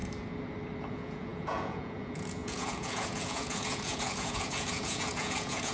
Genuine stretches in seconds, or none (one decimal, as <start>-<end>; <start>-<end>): 0.0-0.9